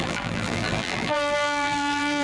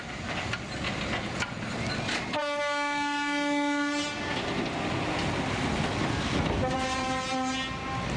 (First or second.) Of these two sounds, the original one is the second